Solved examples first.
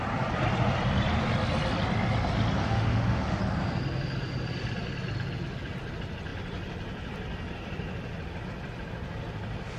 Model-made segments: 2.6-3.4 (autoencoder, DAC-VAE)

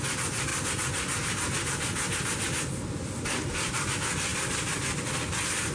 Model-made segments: none

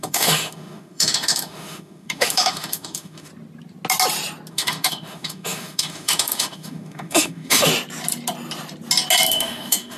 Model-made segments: 0.0-3.3 (autoencoder, DAC-VAE); 4.5-7.7; 9.3-10.0

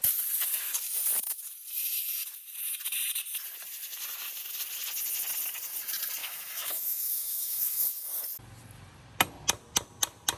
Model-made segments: 6.2-8.1 (autoencoder, DAC-VAE)

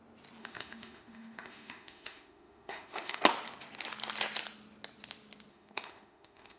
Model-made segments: 0.4-3.2 (autoencoder, DAC-VAE); 5.5-6.6

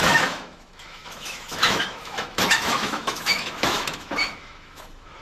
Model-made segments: 0.0-5.2 (autoencoder, DAC-VAE)